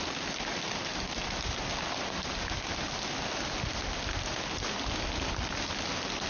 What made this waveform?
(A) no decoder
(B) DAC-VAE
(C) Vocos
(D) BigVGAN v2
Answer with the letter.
A